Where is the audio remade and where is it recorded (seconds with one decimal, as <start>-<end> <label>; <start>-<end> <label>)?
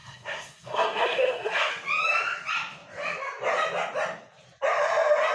0.0-1.7 remade; 1.7-5.3 recorded